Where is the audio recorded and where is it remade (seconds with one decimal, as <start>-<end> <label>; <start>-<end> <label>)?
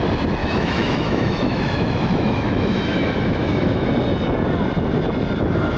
0.0-0.4 recorded; 0.4-3.9 remade; 3.9-5.8 recorded